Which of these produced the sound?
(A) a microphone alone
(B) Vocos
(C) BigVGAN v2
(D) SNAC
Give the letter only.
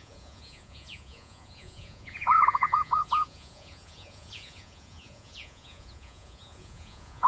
B